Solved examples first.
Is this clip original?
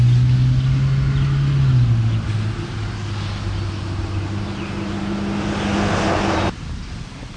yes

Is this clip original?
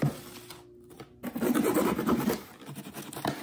yes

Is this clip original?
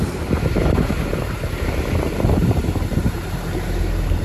no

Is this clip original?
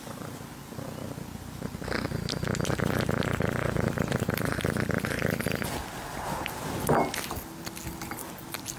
yes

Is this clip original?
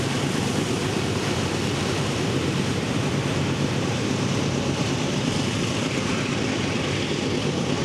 no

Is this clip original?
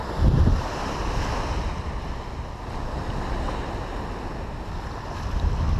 yes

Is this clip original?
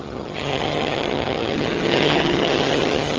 no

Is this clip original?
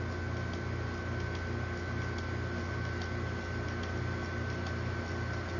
yes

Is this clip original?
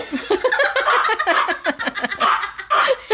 yes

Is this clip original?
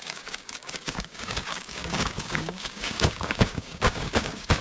no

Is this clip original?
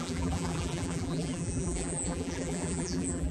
no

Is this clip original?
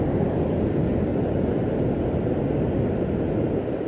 yes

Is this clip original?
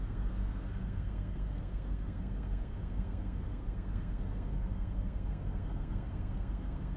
no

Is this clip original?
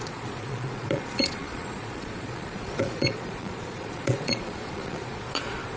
no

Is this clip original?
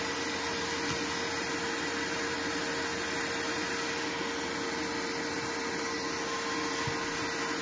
yes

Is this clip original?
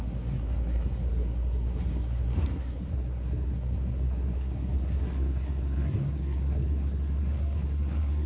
no